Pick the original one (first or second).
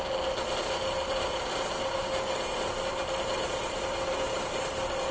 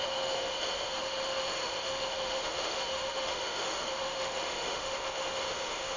first